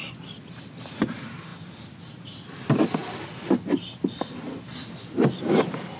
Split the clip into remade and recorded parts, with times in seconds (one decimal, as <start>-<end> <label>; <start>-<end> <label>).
0.0-6.0 recorded